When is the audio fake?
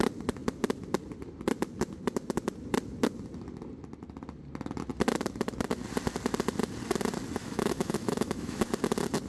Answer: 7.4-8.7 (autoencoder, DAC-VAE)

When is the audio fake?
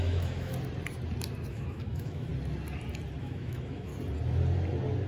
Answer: 0.0-0.5 (autoencoder, DAC-VAE); 1.5-2.3; 3.2-3.9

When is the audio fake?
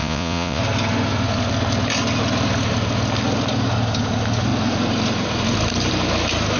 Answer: 0.0-0.6 (vocoder, Vocos)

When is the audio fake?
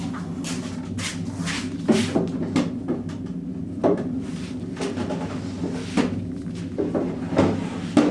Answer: 3.8-4.6 (vocoder, BigVGAN v2)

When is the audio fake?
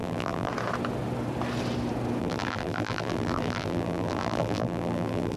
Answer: 0.0-0.5 (vocoder, BigVGAN v2); 2.2-5.4